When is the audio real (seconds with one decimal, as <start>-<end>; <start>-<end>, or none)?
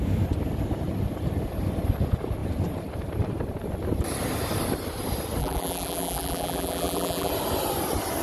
0.0-5.4; 7.3-8.2